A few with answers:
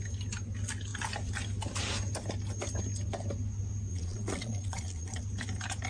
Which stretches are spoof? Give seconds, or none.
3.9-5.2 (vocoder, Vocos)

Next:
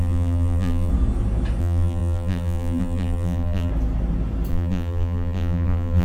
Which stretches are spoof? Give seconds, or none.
0.0-0.9 (vocoder, BigVGAN v2); 1.6-3.7; 4.5-6.0

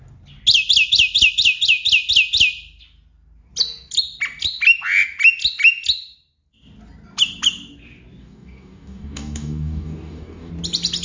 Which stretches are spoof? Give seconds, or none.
8.2-10.5 (codec, DAC)

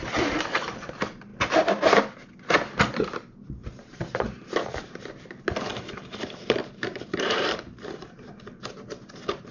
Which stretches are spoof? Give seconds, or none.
3.6-5.0 (vocoder, BigVGAN v2); 5.7-8.1

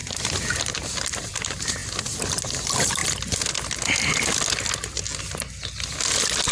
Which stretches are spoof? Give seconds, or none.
0.6-1.8 (vocoder, BigVGAN v2); 2.5-3.0

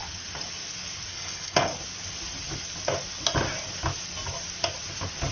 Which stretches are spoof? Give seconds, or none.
1.1-1.7 (codec, HILCodec)

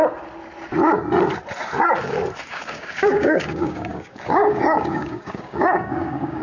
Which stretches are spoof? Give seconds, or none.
2.5-6.4 (codec, DAC)